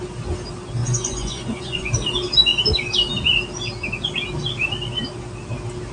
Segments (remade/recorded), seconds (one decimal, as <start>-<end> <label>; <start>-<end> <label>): 0.0-0.8 recorded; 0.8-1.9 remade; 1.9-5.9 recorded